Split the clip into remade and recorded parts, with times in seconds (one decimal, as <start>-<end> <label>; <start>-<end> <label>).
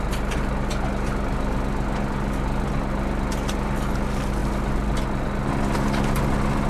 0.0-6.7 recorded